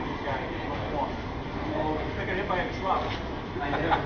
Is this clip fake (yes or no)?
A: no